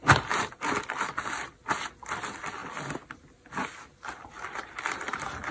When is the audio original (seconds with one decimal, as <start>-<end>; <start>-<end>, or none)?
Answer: 0.6-5.5